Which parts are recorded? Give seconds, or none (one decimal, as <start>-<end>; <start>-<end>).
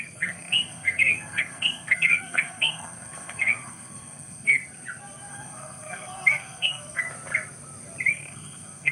4.6-5.3; 7.0-8.1